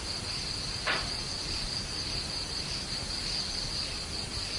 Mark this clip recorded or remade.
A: recorded